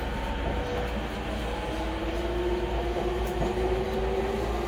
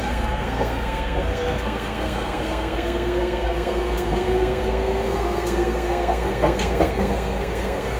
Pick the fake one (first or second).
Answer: second